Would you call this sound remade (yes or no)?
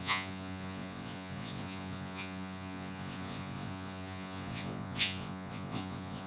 yes